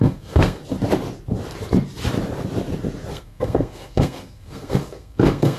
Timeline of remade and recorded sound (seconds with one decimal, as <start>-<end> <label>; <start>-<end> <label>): 0.0-0.6 remade; 0.6-3.1 recorded; 3.1-5.6 remade

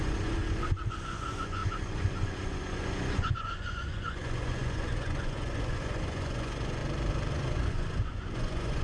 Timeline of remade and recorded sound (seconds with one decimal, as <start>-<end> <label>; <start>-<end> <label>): 0.0-6.8 remade; 6.8-7.3 recorded; 7.3-8.8 remade

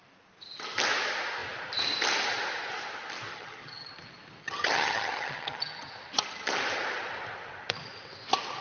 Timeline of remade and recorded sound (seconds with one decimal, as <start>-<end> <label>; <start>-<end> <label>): 0.0-3.3 recorded; 3.3-3.9 remade; 3.9-4.4 recorded; 4.4-5.9 remade; 5.9-8.6 recorded

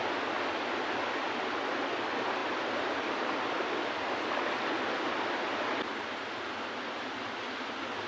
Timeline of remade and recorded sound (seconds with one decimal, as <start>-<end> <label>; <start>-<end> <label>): 0.0-8.1 recorded

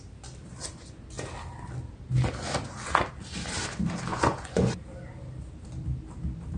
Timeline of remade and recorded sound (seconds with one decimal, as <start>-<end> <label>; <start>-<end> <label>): 0.0-4.1 recorded; 4.1-4.8 remade; 4.8-6.6 recorded

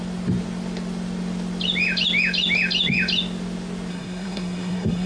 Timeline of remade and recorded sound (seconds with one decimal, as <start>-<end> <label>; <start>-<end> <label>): 0.0-3.9 recorded; 3.9-5.1 remade

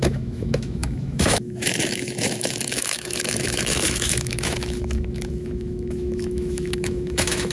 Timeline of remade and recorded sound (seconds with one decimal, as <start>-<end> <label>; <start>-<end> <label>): 0.0-7.5 remade